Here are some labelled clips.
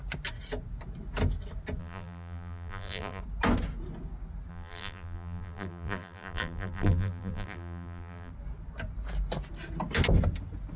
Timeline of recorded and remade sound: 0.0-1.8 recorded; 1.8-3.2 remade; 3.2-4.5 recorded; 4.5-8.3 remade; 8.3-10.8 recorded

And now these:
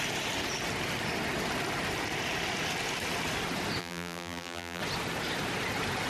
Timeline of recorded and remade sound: 0.0-3.8 recorded; 3.8-4.8 remade; 4.8-6.1 recorded

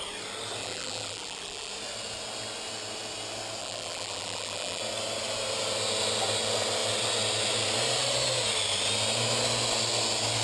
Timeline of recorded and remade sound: 0.0-0.6 recorded; 0.6-1.7 remade; 1.7-3.6 recorded; 3.6-4.8 remade; 4.8-10.4 recorded

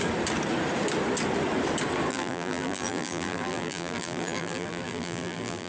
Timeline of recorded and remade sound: 0.0-2.1 recorded; 2.1-5.7 remade

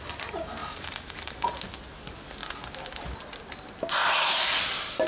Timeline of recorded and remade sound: 0.0-0.6 recorded; 0.6-1.6 remade; 1.6-4.0 recorded; 4.0-5.1 remade